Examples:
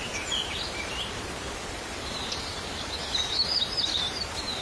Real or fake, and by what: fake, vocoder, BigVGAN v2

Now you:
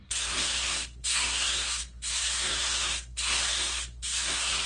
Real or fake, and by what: fake, codec, SNAC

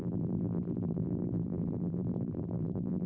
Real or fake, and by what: fake, vocoder, BigVGAN v2